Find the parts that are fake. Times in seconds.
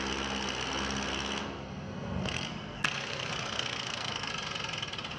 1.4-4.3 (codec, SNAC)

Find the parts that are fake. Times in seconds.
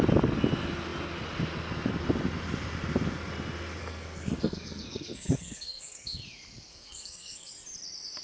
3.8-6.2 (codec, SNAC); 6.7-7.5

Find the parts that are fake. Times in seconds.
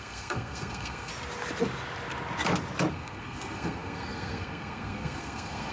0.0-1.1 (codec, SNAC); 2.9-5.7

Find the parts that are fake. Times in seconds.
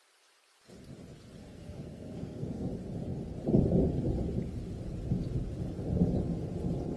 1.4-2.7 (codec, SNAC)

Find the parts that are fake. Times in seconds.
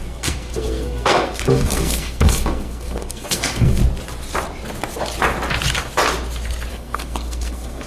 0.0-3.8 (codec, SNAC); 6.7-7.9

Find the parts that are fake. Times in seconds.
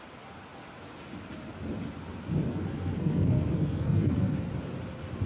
2.5-4.5 (codec, SNAC)